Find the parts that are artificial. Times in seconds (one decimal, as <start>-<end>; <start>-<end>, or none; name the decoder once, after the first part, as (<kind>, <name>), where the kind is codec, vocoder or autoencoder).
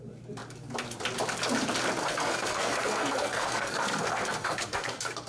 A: 2.0-5.3 (codec, SNAC)